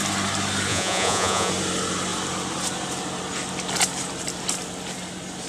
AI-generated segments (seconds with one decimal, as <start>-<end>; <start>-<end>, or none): 0.7-1.5